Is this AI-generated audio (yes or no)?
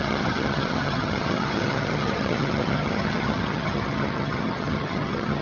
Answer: yes